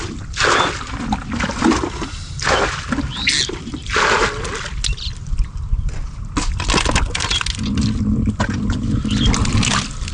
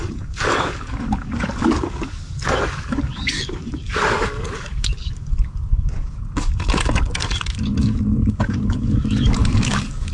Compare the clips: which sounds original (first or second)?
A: first